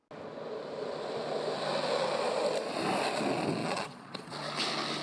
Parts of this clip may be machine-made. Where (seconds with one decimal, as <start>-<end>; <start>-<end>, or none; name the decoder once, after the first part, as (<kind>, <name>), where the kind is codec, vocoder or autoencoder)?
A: 3.6-4.3 (vocoder, Vocos)